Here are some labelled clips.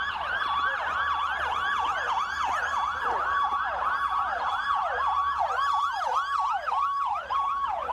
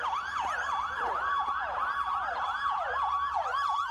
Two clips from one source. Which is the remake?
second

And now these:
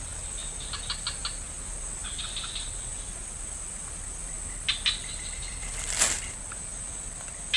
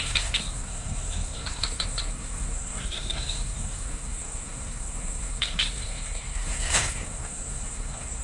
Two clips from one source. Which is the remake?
second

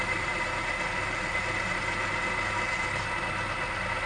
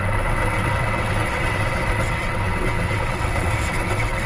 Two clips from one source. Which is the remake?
second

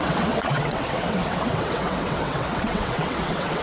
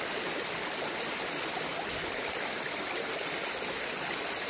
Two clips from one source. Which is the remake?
first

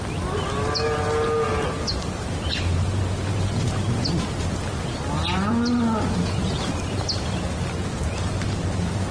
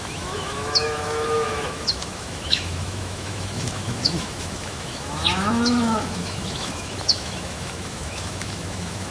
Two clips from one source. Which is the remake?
second